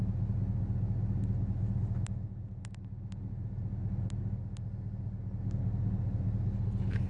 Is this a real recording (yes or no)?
yes